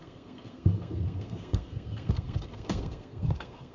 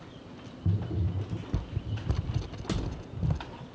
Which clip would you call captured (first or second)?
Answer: second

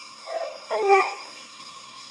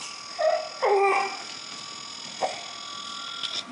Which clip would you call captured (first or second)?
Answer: second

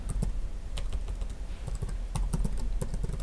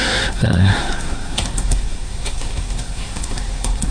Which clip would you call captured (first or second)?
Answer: first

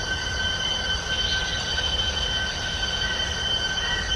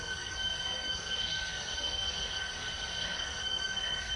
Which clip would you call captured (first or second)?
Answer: first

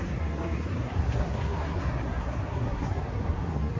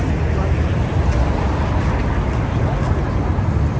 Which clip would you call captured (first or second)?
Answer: second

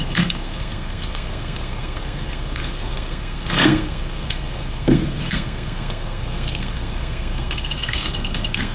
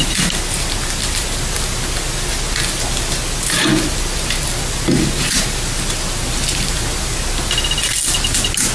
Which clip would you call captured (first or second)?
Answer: second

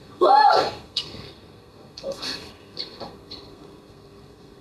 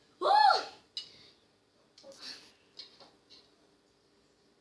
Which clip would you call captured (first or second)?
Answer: second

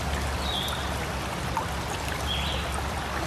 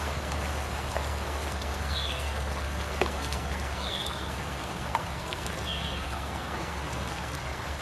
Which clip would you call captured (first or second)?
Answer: first